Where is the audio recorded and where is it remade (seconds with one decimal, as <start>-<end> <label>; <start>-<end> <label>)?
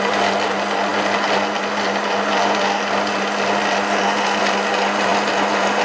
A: 0.0-5.8 recorded